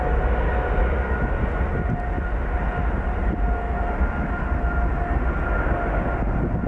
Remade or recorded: recorded